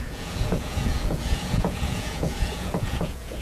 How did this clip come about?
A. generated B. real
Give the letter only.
A